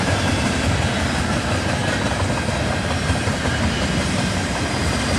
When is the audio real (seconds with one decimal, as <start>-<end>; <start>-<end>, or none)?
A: 1.8-2.6